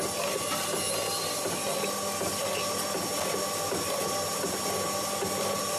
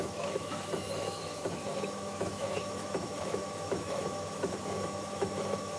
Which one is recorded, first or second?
first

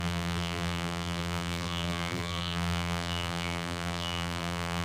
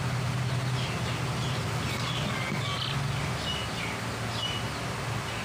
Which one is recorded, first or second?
second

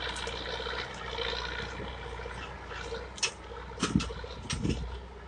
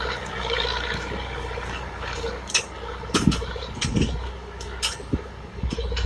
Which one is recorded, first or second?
first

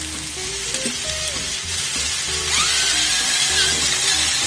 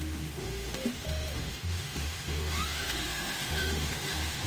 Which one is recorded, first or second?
first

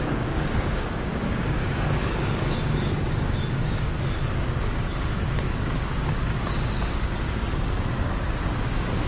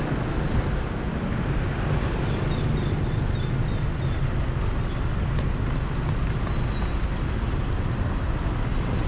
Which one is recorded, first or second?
second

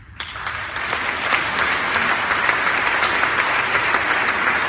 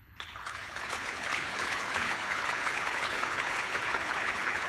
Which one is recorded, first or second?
first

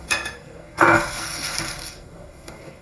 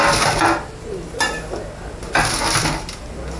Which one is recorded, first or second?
second